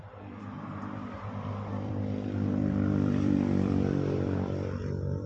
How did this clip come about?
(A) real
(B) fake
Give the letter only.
B